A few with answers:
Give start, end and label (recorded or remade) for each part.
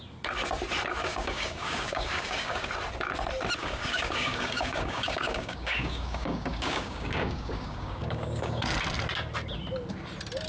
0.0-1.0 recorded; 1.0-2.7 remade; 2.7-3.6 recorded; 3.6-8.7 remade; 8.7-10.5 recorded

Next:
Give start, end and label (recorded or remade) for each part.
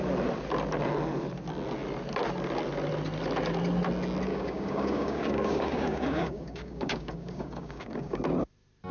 0.0-4.3 recorded; 4.3-8.2 remade; 8.2-8.9 recorded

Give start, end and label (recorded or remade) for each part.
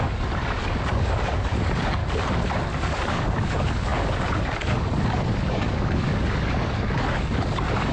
0.0-2.0 remade; 2.0-2.8 recorded; 2.8-7.9 remade